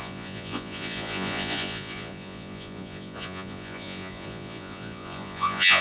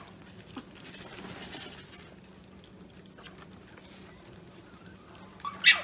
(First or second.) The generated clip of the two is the first